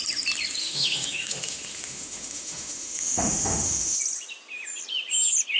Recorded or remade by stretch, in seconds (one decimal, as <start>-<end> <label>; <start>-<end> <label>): 0.0-0.6 recorded; 0.6-4.0 remade; 4.0-5.6 recorded